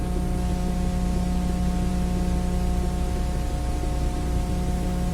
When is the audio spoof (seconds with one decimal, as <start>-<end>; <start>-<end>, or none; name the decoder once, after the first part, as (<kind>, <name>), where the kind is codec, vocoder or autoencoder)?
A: none